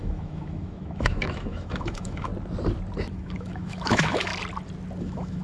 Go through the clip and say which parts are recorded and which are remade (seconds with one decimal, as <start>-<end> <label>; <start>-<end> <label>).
0.0-2.3 remade; 2.3-3.1 recorded; 3.1-4.3 remade; 4.3-5.0 recorded; 5.0-5.4 remade